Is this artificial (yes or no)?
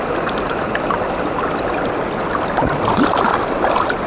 no